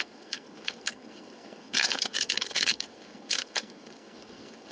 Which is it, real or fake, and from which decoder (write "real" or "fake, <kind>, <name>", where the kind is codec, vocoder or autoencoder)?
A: fake, codec, SNAC